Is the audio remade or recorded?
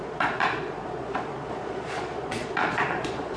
remade